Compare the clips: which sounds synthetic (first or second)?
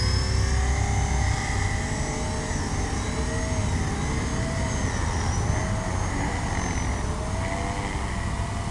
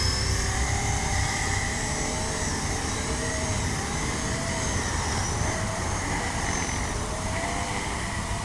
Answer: second